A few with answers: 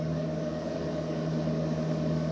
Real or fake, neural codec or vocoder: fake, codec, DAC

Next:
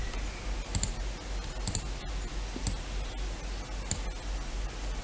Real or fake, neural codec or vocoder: real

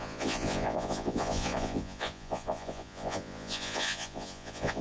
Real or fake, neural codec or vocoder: fake, vocoder, Vocos